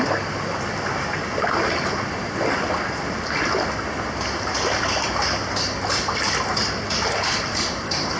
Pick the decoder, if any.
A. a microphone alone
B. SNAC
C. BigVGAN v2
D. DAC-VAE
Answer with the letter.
A